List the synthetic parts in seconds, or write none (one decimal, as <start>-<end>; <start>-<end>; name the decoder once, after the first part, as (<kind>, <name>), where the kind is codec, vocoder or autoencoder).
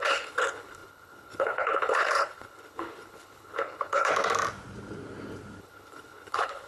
0.0-4.1 (codec, HILCodec); 5.6-6.7